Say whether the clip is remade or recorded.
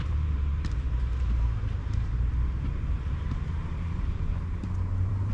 remade